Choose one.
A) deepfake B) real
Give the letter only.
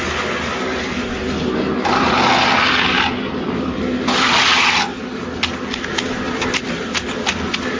B